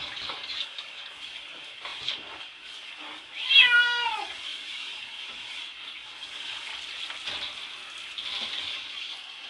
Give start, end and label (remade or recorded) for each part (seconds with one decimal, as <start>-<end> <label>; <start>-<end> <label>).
0.0-6.7 remade; 6.7-8.5 recorded; 8.5-9.5 remade